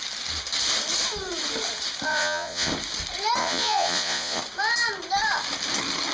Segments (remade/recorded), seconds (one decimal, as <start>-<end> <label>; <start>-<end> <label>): 0.0-2.1 recorded; 2.1-2.7 remade; 2.7-3.4 recorded; 3.4-4.4 remade; 4.4-6.1 recorded